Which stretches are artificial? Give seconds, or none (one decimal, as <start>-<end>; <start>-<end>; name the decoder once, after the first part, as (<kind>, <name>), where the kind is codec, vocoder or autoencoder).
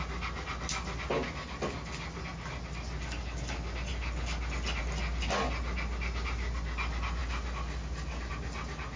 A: none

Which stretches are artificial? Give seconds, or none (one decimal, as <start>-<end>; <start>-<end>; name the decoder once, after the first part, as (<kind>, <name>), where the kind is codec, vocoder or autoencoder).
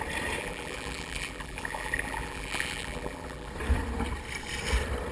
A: 0.4-3.5 (vocoder, BigVGAN v2)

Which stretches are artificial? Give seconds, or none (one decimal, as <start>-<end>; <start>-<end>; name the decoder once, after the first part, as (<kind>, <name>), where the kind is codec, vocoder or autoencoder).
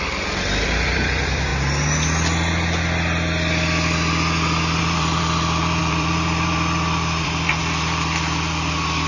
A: 0.0-1.5 (vocoder, BigVGAN v2); 4.8-9.1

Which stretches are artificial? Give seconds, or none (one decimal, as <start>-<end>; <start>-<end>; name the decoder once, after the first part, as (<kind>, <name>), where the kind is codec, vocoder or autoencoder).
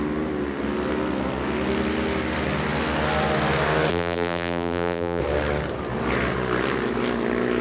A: 3.9-5.2 (vocoder, BigVGAN v2)